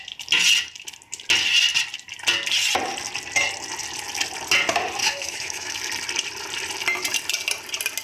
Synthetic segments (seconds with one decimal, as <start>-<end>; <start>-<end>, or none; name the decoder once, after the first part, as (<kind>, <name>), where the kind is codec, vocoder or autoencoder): 5.0-5.8 (autoencoder, DAC-VAE)